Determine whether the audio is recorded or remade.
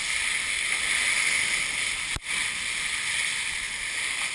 recorded